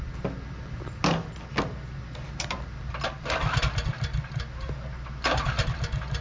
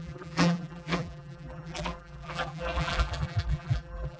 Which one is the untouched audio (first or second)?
first